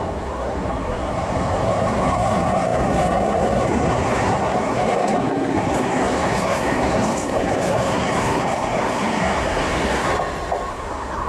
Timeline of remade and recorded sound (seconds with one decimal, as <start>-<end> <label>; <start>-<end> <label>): 0.0-10.1 remade; 10.1-10.7 recorded; 10.7-11.3 remade